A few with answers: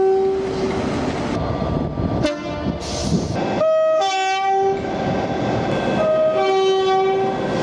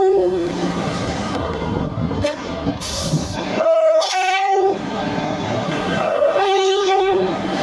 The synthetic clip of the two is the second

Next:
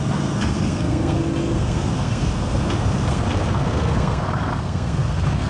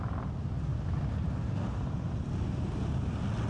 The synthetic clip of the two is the first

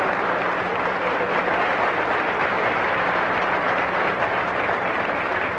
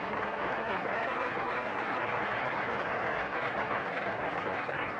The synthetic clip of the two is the second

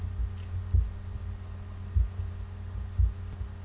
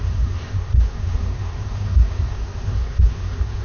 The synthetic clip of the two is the second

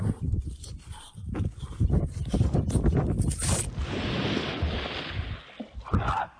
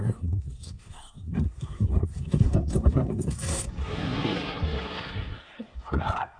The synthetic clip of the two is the second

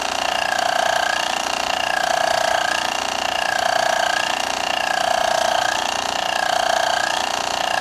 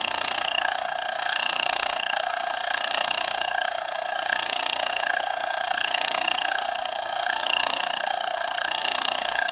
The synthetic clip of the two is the second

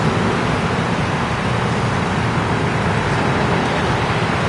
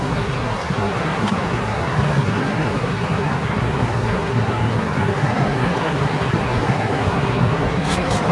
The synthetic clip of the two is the second